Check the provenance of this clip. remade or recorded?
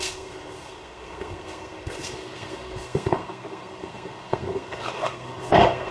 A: remade